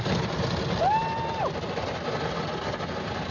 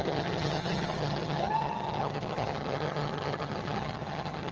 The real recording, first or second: first